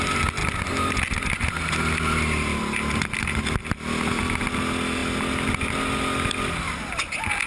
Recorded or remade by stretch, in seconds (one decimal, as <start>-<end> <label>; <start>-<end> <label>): 0.0-7.5 recorded